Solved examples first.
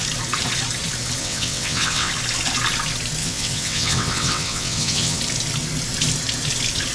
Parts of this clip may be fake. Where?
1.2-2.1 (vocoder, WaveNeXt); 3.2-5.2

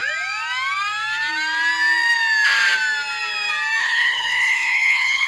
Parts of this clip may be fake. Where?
3.8-5.3 (codec, HILCodec)

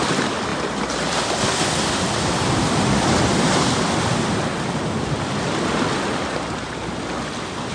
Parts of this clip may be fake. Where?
0.5-4.8 (vocoder, BigVGAN v2)

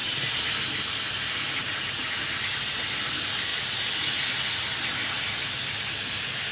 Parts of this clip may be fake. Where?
none

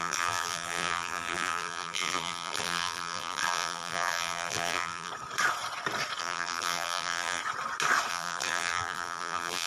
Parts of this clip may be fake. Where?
0.0-5.1 (vocoder, BigVGAN v2); 6.2-7.4; 8.1-9.7

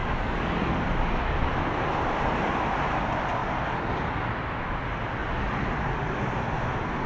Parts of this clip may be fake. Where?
0.0-1.3 (codec, DAC); 3.4-4.2

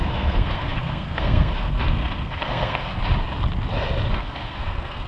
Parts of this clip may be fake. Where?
0.0-3.0 (codec, SNAC); 4.1-5.1

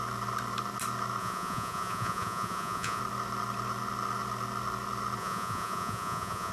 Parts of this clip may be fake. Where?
1.2-3.0 (vocoder, Vocos); 5.2-6.5